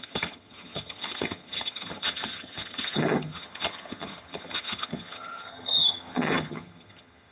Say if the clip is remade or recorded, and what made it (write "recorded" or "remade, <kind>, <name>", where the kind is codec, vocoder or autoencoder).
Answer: remade, vocoder, HiFi-GAN